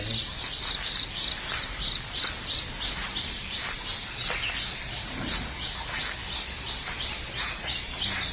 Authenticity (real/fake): real